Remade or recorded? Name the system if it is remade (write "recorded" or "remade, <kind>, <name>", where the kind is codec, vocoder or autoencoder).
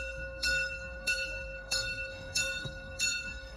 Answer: remade, codec, SNAC